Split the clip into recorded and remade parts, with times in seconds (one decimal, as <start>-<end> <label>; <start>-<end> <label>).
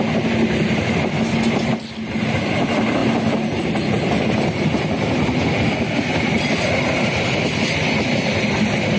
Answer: 0.0-9.0 recorded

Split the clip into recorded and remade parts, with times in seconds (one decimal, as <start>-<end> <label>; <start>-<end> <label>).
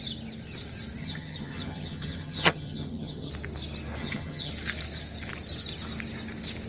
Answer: 0.0-1.0 recorded; 1.0-3.3 remade; 3.3-4.0 recorded; 4.0-4.5 remade; 4.5-6.7 recorded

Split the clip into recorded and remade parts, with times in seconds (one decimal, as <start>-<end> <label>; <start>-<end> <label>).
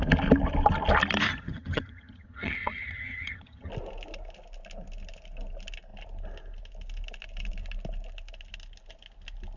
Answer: 0.0-1.3 recorded; 1.3-3.7 remade; 3.7-9.6 recorded